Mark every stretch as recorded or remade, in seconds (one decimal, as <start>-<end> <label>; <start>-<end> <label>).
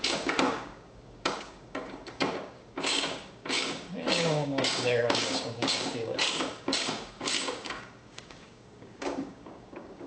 0.0-10.1 remade